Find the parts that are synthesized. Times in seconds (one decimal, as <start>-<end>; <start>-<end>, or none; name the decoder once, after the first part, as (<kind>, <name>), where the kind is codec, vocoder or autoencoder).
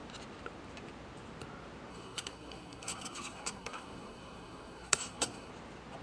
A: 1.9-5.5 (codec, SNAC)